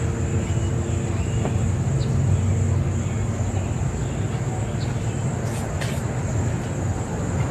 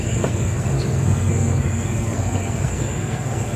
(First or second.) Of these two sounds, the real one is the first